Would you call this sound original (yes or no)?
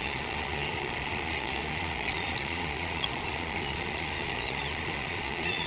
no